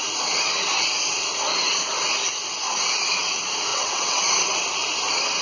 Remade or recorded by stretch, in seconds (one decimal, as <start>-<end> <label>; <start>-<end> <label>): 0.0-3.7 recorded; 3.7-4.2 remade; 4.2-5.4 recorded